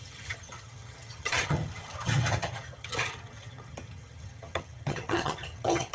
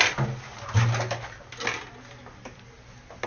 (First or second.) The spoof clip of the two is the first